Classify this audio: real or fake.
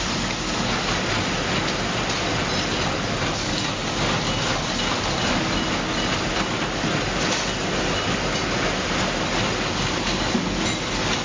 real